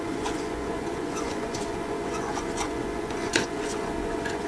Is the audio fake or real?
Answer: fake